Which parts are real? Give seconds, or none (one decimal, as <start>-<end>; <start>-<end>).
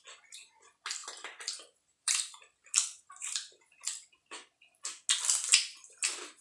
0.0-1.0; 4.8-6.4